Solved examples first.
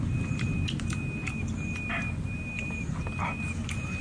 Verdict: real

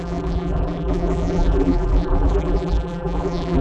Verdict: fake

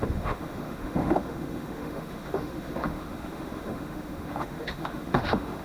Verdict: fake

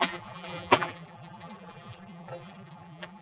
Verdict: fake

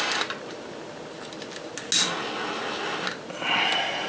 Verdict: real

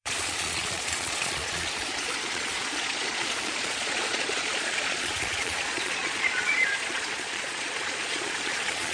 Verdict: fake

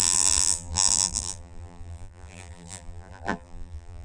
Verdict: fake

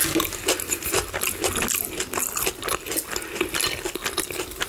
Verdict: real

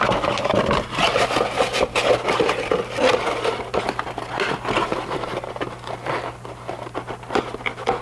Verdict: real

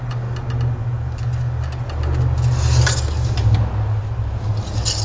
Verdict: real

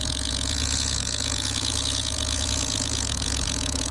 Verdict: fake